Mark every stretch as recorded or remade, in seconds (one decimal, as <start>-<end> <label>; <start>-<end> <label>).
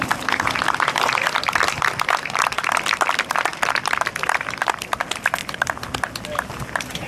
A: 0.0-3.5 remade; 3.5-4.4 recorded; 4.4-7.1 remade